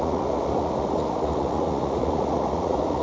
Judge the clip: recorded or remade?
remade